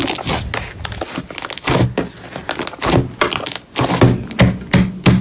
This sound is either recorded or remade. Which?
recorded